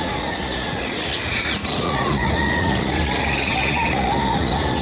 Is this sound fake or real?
fake